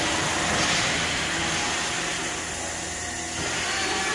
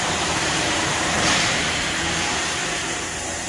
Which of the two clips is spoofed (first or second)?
second